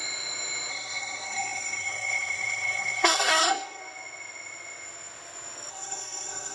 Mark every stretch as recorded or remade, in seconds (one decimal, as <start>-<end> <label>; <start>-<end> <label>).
0.0-0.7 recorded; 0.7-3.8 remade; 3.8-5.7 recorded; 5.7-6.5 remade